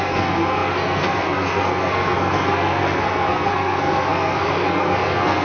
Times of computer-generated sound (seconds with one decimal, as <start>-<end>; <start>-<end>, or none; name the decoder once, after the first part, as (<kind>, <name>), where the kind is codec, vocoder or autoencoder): 0.0-5.4 (codec, SNAC)